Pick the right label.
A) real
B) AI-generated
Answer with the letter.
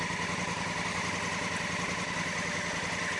A